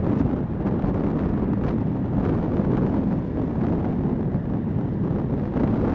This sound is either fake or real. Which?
real